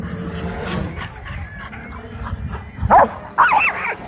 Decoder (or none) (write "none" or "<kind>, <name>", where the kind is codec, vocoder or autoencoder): none